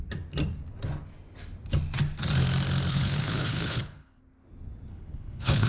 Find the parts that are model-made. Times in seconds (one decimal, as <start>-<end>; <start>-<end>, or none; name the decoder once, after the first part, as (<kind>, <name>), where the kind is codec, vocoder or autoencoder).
2.9-4.2 (codec, HILCodec); 4.9-5.7